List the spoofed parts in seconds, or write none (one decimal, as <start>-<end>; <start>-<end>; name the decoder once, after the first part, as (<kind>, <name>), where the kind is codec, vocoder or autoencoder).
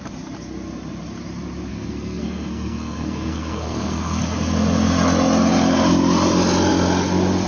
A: 1.7-4.2 (codec, SNAC)